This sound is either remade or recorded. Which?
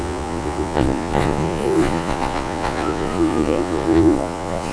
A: remade